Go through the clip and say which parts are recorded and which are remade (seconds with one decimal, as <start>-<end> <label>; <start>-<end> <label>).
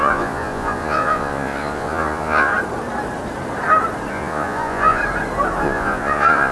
0.0-2.5 remade; 2.5-4.1 recorded; 4.1-5.0 remade; 5.0-5.6 recorded; 5.6-6.5 remade